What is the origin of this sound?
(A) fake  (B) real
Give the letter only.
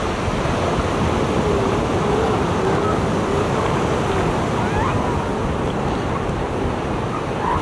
B